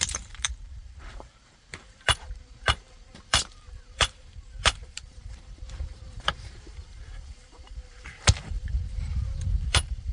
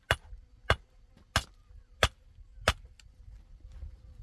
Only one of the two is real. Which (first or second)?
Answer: second